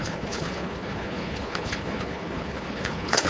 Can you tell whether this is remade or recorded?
remade